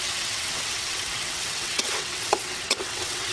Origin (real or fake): fake